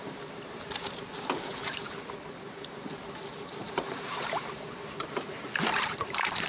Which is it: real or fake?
fake